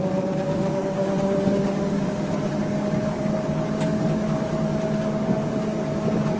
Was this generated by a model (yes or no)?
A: yes